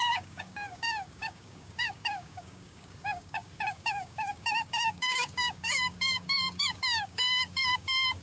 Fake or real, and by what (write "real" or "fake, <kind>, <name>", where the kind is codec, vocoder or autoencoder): fake, codec, DAC